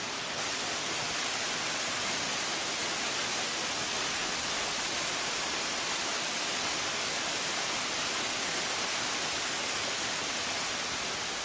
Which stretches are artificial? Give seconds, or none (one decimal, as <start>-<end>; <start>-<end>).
4.2-7.9